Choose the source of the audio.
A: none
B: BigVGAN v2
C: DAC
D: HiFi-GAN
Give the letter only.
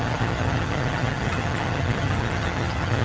D